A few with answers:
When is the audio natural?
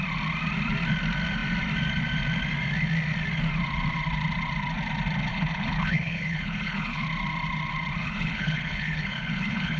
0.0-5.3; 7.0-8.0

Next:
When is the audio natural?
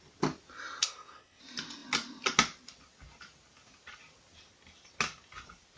0.0-0.8; 1.4-5.8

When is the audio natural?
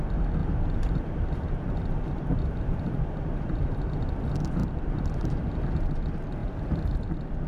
0.0-0.4; 4.1-4.6; 5.7-6.4; 7.1-7.5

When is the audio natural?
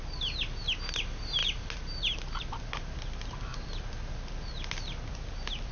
0.0-1.4; 2.6-3.5; 4.1-5.7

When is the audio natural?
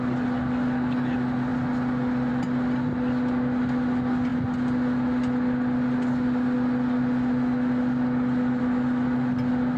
0.0-9.8